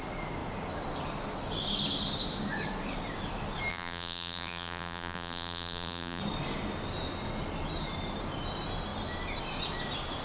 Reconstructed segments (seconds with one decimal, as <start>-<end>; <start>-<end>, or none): 3.7-6.2